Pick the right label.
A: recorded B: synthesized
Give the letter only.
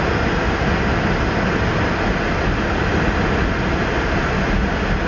A